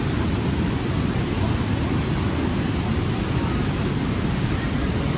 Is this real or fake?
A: real